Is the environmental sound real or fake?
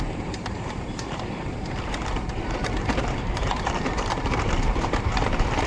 fake